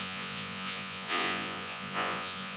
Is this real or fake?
fake